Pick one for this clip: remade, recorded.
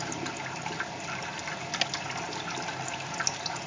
recorded